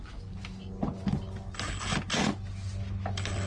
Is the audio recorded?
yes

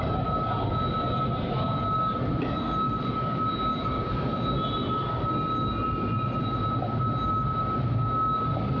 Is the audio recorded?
yes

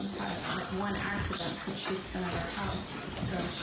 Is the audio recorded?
yes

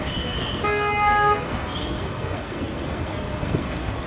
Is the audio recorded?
no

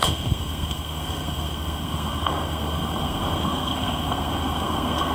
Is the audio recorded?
no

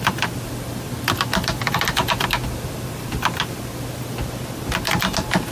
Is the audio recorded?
yes